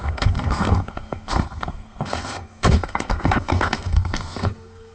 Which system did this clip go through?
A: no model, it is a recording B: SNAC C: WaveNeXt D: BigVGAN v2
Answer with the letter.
B